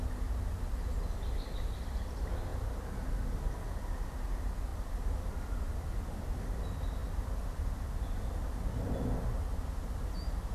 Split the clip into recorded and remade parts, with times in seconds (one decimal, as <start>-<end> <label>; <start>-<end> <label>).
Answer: 0.0-10.5 recorded

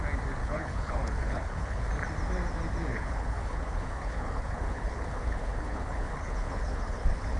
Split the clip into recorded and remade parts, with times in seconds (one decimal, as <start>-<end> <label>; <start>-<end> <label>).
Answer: 0.0-0.4 recorded; 0.4-1.9 remade; 1.9-2.9 recorded; 2.9-7.4 remade

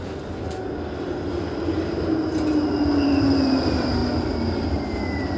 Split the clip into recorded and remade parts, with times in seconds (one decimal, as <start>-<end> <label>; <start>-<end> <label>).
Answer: 0.0-5.4 recorded

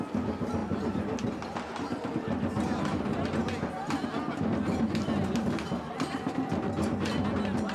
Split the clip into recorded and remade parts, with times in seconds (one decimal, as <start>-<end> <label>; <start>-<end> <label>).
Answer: 0.0-7.7 recorded

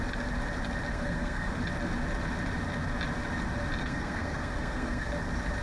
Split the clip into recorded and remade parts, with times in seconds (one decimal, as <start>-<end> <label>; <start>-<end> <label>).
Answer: 0.0-0.9 recorded; 0.9-1.5 remade; 1.5-3.8 recorded; 3.8-5.1 remade; 5.1-5.6 recorded